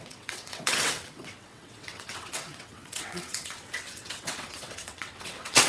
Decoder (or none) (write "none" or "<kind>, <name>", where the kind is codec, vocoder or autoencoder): vocoder, WaveNeXt